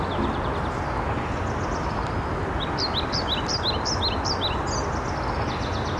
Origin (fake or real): real